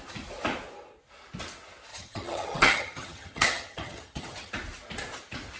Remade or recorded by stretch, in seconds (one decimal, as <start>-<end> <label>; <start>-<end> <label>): 0.0-1.9 recorded; 1.9-4.5 remade; 4.5-5.6 recorded